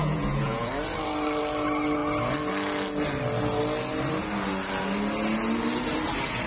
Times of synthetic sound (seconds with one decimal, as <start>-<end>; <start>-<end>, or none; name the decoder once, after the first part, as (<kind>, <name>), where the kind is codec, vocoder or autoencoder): 0.0-0.7 (vocoder, Vocos)